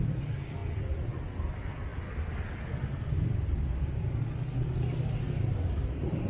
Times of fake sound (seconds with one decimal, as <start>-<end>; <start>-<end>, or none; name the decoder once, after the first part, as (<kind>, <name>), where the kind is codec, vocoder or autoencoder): none

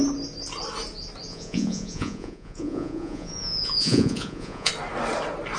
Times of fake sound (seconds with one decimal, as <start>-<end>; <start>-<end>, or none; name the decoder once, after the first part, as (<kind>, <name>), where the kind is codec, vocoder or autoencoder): 1.3-4.7 (vocoder, Vocos)

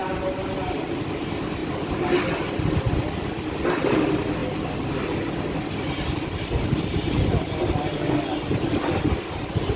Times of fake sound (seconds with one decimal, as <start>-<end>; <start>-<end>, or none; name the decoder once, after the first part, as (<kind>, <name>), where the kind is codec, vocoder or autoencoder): none

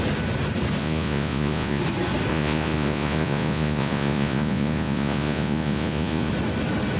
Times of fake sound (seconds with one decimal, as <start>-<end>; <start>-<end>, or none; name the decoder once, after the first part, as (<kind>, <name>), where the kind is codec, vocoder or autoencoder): 0.8-1.8 (vocoder, Vocos); 2.3-6.3

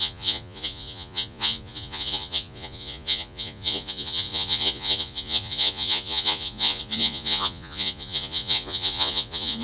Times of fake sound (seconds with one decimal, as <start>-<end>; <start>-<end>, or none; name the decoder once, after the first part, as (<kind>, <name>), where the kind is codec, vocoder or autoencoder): 0.0-9.6 (vocoder, Vocos)